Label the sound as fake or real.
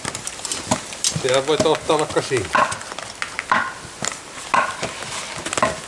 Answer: real